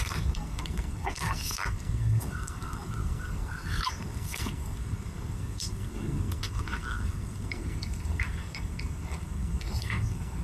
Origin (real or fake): fake